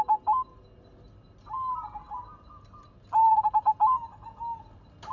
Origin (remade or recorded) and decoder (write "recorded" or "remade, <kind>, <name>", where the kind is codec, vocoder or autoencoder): recorded